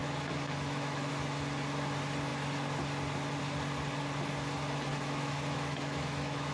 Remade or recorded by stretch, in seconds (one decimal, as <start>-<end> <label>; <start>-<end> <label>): 0.0-1.1 remade; 1.1-4.9 recorded; 4.9-6.5 remade